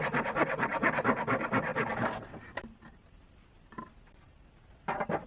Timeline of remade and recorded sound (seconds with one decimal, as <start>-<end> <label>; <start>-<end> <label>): 0.0-1.7 recorded; 1.7-2.8 remade; 2.8-5.3 recorded